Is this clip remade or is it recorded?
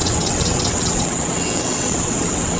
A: remade